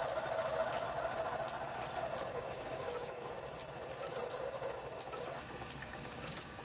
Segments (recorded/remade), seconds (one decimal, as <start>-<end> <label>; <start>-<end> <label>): 0.0-2.3 recorded; 2.3-3.3 remade; 3.3-5.8 recorded; 5.8-6.6 remade